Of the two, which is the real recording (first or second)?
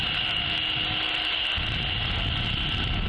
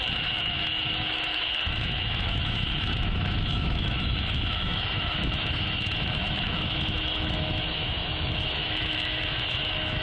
first